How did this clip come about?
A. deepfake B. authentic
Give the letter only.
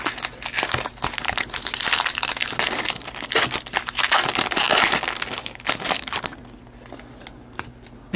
B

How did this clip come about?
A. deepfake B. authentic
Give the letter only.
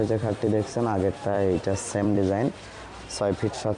A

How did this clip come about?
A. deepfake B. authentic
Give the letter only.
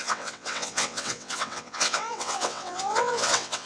A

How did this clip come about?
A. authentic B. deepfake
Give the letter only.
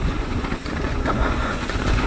B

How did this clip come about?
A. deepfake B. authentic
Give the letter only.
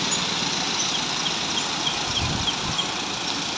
B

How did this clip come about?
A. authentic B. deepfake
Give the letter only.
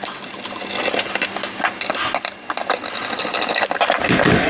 A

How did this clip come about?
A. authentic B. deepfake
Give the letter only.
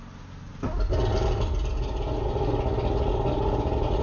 A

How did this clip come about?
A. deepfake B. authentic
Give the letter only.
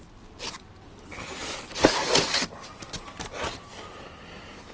B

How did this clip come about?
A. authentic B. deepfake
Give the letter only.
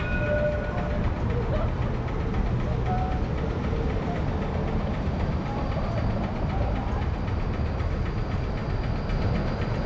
A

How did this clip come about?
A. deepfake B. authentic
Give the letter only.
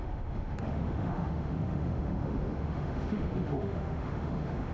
A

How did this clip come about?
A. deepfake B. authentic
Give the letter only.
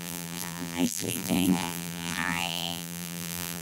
A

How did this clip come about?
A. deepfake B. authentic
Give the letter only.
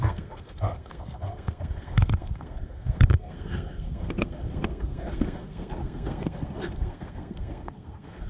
A